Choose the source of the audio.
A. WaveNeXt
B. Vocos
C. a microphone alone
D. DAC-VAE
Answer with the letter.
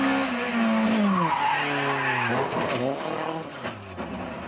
C